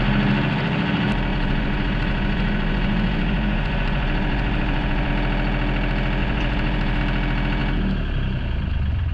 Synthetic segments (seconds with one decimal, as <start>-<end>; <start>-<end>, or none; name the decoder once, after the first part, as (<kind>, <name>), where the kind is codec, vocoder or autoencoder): 1.3-5.1 (vocoder, Vocos); 6.2-7.0